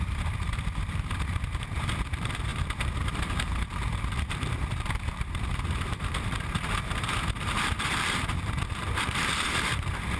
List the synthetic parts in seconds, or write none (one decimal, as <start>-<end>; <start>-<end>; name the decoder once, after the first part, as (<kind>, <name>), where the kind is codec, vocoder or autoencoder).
0.0-10.2 (vocoder, BigVGAN v2)